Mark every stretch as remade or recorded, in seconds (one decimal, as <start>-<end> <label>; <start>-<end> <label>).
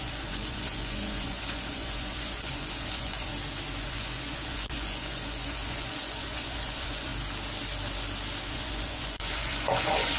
0.0-3.3 remade; 3.3-3.8 recorded; 3.8-7.1 remade; 7.1-8.5 recorded; 8.5-10.2 remade